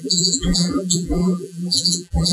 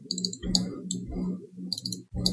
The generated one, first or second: first